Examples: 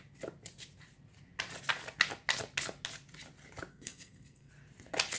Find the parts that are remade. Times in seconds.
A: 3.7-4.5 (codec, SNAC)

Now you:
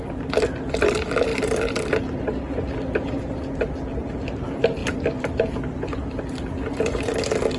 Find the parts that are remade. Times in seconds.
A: none

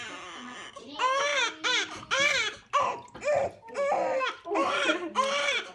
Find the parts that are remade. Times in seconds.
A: none

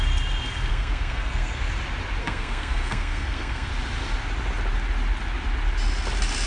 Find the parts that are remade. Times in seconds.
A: 0.7-1.6 (codec, SNAC); 2.2-3.7

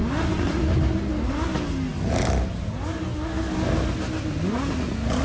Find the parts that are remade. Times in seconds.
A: none

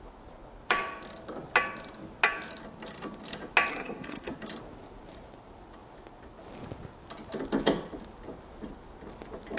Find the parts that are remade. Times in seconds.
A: 3.7-4.3 (codec, SNAC)

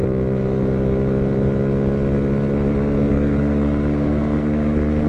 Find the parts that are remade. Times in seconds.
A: 3.1-5.1 (codec, SNAC)